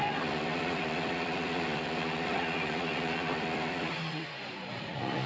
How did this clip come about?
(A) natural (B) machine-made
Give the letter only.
B